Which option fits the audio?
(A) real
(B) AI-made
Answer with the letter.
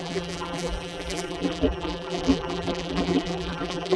B